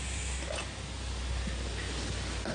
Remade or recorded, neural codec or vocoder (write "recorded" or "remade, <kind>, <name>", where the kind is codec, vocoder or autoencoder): recorded